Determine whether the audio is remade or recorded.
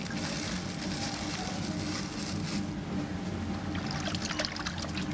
recorded